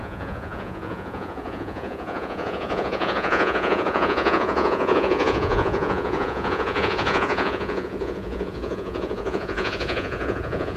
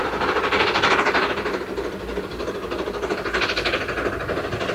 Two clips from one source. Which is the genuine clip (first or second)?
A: second